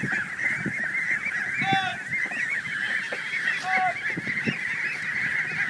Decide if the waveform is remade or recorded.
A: recorded